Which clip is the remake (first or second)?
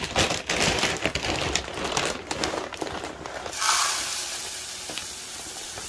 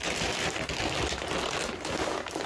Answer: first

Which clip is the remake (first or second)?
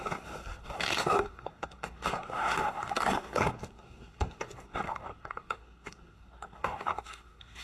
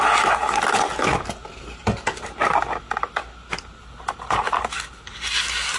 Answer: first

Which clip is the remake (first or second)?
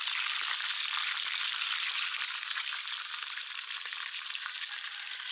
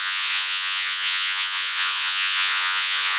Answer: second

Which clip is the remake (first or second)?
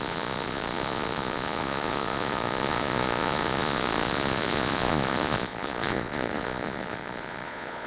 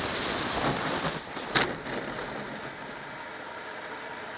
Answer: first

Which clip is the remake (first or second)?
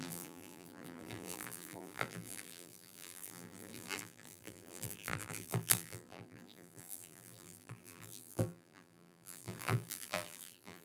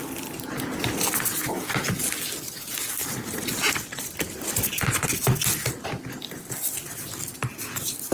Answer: first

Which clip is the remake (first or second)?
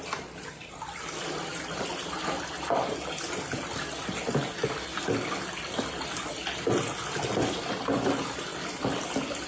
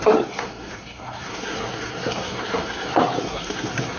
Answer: second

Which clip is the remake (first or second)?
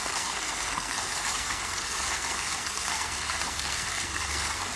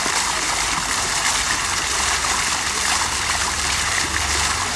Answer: first